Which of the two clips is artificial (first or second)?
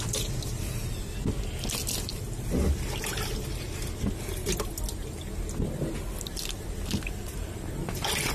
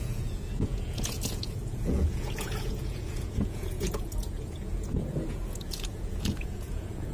second